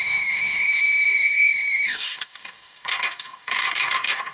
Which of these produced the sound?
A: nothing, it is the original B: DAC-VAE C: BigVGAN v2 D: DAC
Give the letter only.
D